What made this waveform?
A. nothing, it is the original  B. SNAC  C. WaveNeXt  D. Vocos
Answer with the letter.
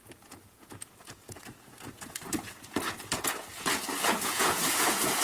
D